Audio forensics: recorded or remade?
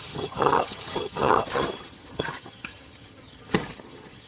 remade